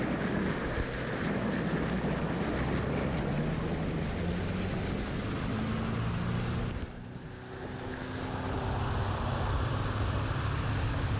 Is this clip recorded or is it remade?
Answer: recorded